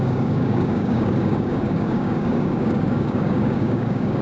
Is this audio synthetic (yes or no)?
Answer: yes